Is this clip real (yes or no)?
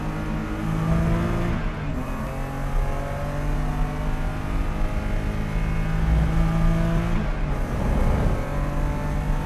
yes